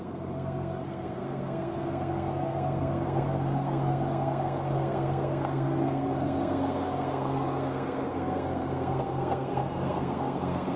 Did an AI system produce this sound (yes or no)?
yes